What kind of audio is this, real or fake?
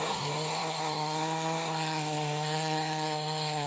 fake